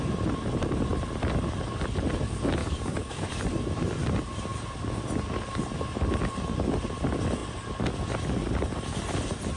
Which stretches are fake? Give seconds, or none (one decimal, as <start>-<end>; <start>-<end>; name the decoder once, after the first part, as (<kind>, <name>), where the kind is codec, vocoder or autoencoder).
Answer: 2.6-3.4 (codec, DAC)